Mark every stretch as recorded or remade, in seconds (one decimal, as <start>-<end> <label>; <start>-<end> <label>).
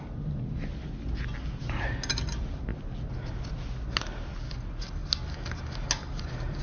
0.0-6.6 recorded